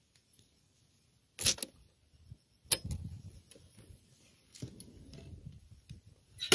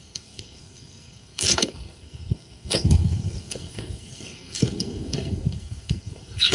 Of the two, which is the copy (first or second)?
second